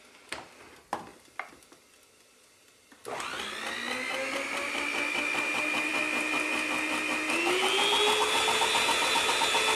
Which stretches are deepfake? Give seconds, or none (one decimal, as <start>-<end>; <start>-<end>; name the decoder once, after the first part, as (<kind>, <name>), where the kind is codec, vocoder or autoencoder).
1.1-3.3 (vocoder, BigVGAN v2)